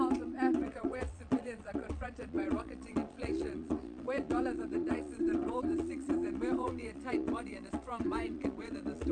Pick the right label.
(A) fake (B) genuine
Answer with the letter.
A